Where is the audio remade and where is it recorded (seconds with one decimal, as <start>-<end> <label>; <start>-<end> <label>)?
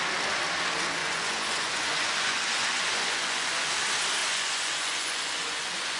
0.0-1.0 recorded; 1.0-3.7 remade; 3.7-4.2 recorded; 4.2-6.0 remade